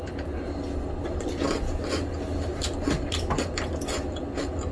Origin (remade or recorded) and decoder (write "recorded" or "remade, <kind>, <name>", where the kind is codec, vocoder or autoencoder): recorded